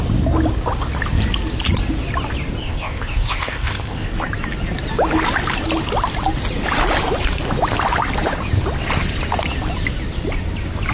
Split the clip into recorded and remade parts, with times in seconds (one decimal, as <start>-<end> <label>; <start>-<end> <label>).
0.0-2.6 recorded; 2.6-4.1 remade; 4.1-10.9 recorded